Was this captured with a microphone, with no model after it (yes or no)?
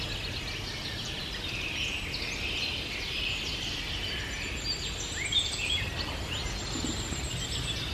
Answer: yes